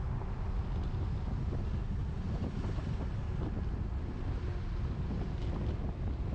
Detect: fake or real real